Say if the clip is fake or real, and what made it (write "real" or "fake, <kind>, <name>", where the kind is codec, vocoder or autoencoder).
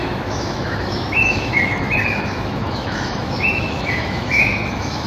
fake, autoencoder, DAC-VAE